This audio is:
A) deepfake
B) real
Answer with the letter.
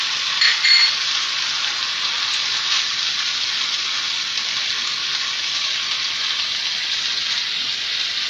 B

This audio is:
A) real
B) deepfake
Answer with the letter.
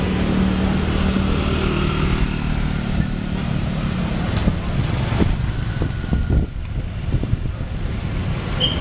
A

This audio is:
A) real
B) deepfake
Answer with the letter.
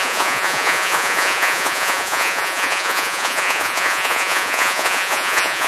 B